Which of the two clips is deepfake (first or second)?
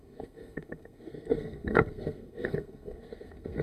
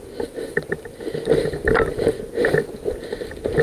first